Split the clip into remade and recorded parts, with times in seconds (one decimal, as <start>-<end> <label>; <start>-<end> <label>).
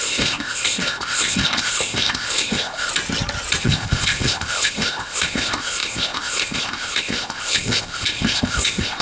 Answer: 0.0-2.9 remade; 2.9-3.6 recorded; 3.6-9.0 remade